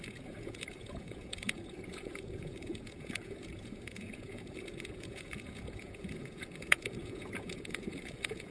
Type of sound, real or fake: fake